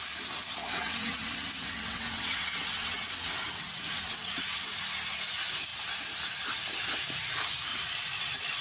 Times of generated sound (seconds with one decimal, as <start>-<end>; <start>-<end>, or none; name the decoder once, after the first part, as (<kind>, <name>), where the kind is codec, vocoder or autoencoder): 0.4-4.8 (vocoder, WaveNeXt); 7.7-8.6